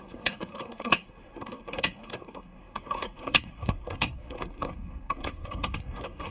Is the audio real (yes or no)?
no